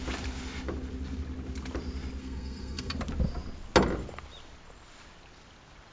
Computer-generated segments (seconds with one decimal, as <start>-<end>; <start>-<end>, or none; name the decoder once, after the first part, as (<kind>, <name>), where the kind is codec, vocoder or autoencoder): 2.2-2.9 (codec, SNAC)